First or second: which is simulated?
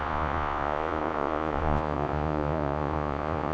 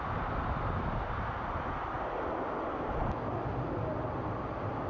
first